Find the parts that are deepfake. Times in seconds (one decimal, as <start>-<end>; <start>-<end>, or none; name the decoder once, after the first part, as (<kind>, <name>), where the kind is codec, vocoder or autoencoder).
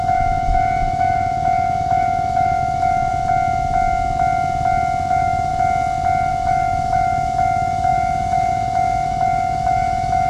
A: 0.0-3.1 (autoencoder, DAC-VAE); 5.1-5.5; 6.3-10.3